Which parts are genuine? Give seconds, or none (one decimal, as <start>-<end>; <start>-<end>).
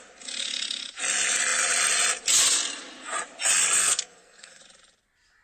0.0-3.8; 4.6-5.4